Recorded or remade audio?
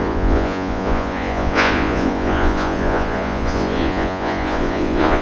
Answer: remade